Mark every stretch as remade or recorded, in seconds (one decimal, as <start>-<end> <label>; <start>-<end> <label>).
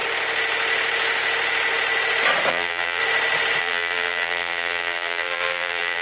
0.0-2.5 recorded; 2.5-3.0 remade; 3.0-3.6 recorded; 3.6-6.0 remade